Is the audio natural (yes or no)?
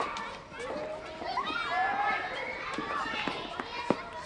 yes